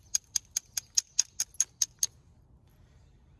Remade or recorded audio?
recorded